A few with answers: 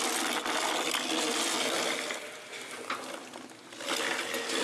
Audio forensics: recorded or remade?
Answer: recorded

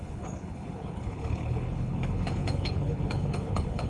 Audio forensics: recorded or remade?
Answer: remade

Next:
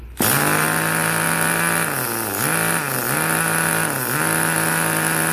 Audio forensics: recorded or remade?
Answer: recorded